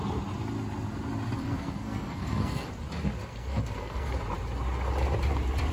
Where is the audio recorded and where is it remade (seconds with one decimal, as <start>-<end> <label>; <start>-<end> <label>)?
0.0-1.4 recorded; 1.4-2.7 remade; 2.7-3.2 recorded; 3.2-4.1 remade; 4.1-5.7 recorded